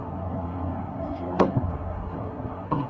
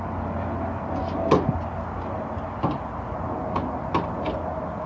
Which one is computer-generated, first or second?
first